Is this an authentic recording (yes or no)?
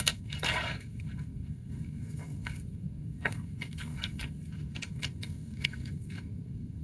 no